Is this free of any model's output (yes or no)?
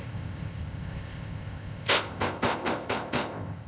no